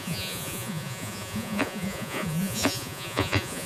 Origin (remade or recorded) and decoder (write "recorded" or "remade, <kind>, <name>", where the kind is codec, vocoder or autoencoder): remade, vocoder, Vocos